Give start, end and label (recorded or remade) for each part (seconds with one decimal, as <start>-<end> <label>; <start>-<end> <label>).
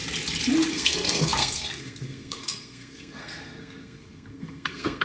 0.0-0.7 recorded; 0.7-5.0 remade